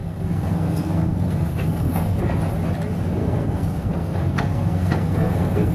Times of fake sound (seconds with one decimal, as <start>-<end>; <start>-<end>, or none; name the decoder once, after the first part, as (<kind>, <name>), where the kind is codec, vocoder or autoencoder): 0.0-2.2 (codec, SNAC); 3.2-5.7